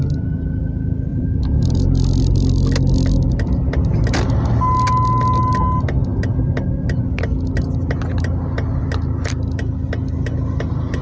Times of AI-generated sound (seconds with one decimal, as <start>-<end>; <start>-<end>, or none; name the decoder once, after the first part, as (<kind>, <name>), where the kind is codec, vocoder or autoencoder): 1.1-1.8 (vocoder, BigVGAN v2)